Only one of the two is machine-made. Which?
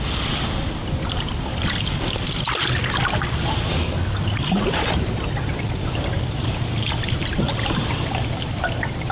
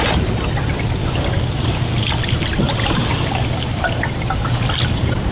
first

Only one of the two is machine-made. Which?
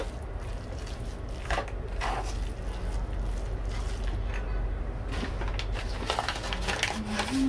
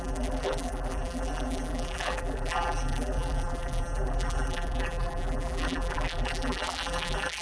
second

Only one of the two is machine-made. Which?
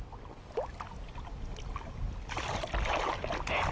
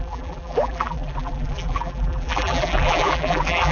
second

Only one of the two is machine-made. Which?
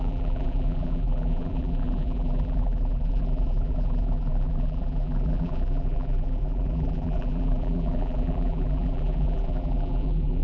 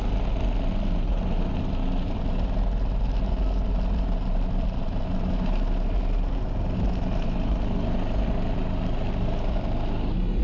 first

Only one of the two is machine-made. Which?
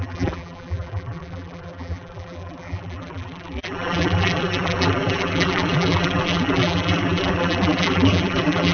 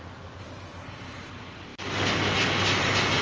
first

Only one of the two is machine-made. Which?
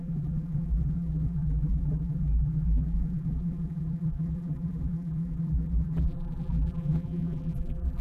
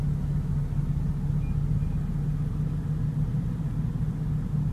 first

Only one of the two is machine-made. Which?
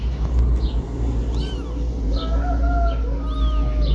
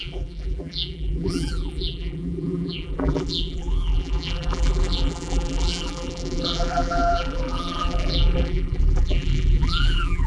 second